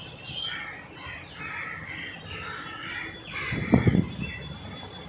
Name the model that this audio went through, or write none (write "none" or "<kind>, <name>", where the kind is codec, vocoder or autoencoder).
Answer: none